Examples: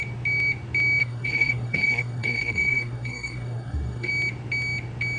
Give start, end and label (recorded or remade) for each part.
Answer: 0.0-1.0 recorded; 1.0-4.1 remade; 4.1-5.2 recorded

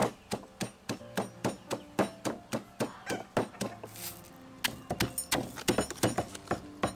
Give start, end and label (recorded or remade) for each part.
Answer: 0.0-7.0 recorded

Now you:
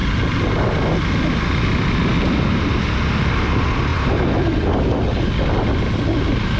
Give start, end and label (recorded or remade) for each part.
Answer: 0.0-6.6 recorded

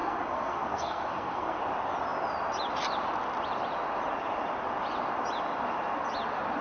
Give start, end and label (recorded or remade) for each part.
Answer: 0.0-1.6 remade; 1.6-6.6 recorded

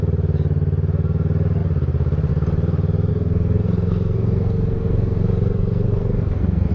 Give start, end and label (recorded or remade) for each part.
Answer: 0.0-3.1 recorded; 3.1-6.7 remade